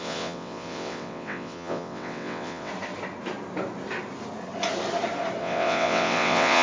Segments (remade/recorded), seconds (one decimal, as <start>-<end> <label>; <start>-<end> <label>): 0.0-2.7 remade; 2.7-5.4 recorded; 5.4-6.6 remade